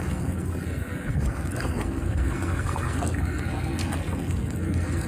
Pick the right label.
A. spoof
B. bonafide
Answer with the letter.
A